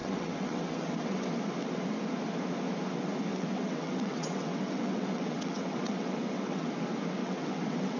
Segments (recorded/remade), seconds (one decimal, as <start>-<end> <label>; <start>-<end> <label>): 0.0-1.3 remade; 1.3-3.3 recorded; 3.3-6.7 remade; 6.7-7.2 recorded; 7.2-8.0 remade